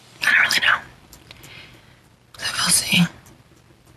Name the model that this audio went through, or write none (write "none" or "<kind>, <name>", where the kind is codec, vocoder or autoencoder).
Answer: none